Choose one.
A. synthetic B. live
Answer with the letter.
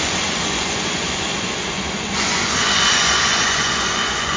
A